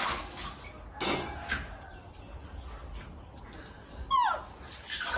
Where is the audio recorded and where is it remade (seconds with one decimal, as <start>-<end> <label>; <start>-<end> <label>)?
0.0-5.2 recorded